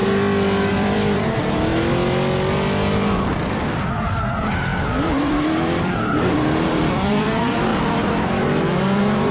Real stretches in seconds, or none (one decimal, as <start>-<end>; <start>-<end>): 0.0-0.7; 1.7-3.7